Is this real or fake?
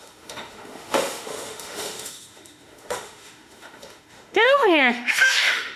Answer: fake